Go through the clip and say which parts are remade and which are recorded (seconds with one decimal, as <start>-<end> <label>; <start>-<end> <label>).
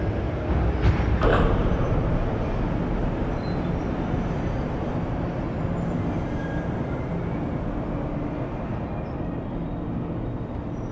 0.0-1.3 recorded; 1.3-4.9 remade; 4.9-10.9 recorded